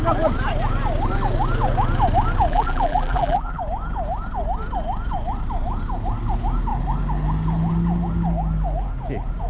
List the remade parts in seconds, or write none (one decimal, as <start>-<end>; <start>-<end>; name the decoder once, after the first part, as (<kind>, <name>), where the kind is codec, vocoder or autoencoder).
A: 2.5-3.6 (vocoder, BigVGAN v2)

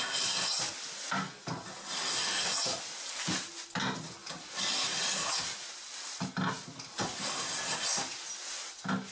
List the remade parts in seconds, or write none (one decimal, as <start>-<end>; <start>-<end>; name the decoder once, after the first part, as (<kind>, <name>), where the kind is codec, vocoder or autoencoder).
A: none

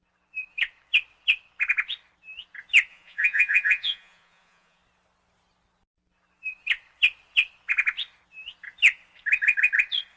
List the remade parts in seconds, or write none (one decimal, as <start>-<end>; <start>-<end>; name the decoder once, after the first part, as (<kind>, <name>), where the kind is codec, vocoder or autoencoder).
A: 2.9-4.8 (vocoder, Vocos)

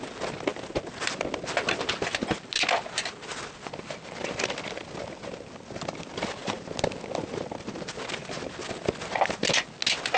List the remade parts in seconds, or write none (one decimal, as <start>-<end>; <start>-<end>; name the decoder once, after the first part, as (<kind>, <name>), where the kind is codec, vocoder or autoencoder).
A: none